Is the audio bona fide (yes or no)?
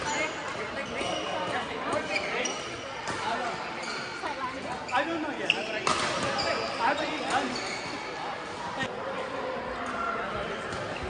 yes